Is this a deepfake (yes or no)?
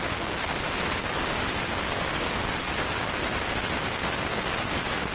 no